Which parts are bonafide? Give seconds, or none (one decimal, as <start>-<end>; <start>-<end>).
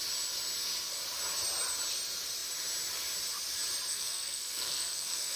0.0-3.9